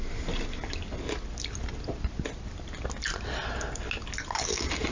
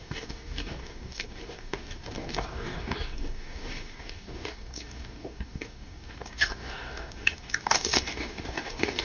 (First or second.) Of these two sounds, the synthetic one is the second